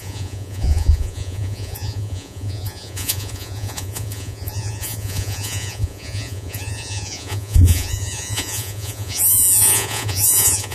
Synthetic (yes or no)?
yes